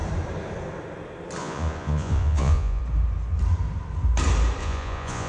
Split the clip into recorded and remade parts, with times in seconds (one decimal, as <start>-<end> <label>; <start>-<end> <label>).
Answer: 0.0-1.4 recorded; 1.4-2.8 remade; 2.8-4.6 recorded; 4.6-5.3 remade